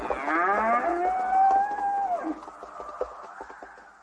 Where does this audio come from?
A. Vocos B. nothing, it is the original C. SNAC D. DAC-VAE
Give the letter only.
B